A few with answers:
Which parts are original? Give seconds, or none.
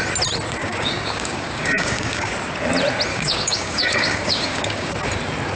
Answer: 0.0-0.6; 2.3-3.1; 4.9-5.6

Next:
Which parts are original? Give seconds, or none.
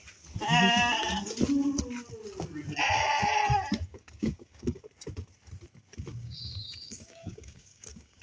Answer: 0.0-3.9; 4.8-6.1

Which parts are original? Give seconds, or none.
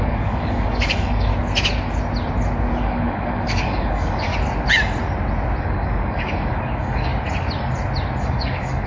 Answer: 1.3-2.8; 4.3-5.6; 7.1-8.2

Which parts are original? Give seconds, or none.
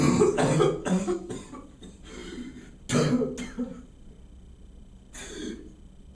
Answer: 0.0-0.8; 1.3-6.1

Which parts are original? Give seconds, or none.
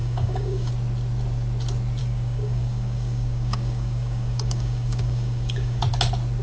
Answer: 0.7-2.0; 5.8-6.4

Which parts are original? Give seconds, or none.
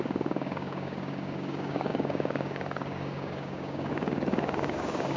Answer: none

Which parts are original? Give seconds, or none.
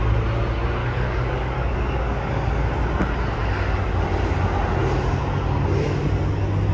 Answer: 0.0-0.8; 2.7-6.7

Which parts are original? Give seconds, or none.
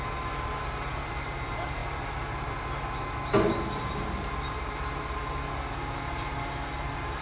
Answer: 0.0-7.2